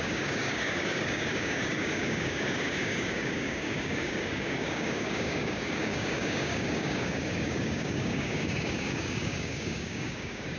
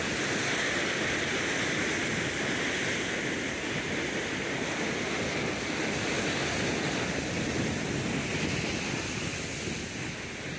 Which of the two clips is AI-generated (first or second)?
first